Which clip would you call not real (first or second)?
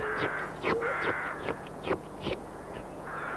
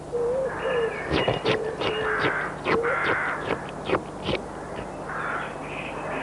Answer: first